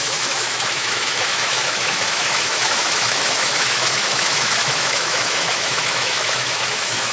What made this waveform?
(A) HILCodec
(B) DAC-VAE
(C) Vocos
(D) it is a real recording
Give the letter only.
B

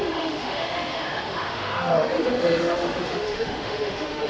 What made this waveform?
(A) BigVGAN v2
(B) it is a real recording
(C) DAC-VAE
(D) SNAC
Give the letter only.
C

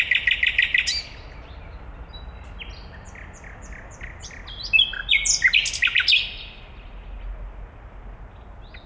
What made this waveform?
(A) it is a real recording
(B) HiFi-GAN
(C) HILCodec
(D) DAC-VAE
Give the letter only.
A